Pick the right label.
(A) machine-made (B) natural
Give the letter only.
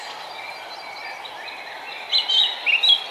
B